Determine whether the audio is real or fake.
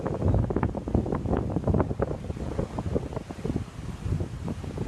real